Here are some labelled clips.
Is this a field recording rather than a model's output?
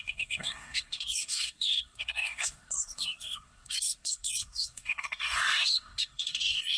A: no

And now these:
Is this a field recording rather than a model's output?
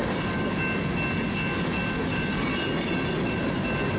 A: yes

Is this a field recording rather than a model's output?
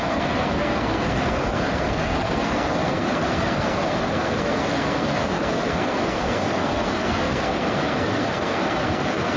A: no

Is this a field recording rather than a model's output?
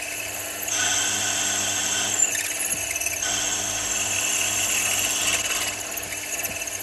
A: yes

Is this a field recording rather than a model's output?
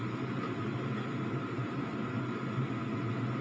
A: yes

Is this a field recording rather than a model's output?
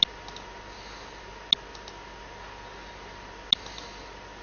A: yes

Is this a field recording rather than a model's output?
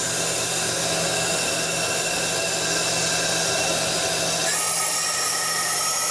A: yes